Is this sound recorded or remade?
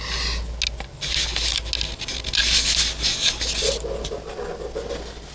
recorded